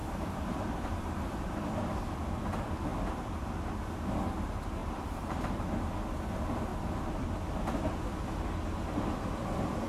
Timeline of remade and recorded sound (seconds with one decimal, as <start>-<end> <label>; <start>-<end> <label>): 0.0-1.5 remade; 1.5-4.8 recorded; 4.8-5.6 remade; 5.6-9.9 recorded